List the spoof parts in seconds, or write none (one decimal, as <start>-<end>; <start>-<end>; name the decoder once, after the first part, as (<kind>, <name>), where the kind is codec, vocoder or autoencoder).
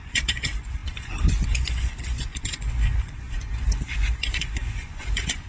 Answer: 0.0-5.5 (vocoder, Vocos)